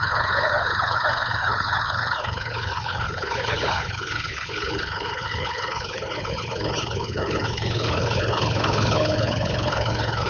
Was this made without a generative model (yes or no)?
no